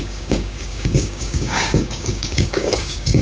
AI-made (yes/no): yes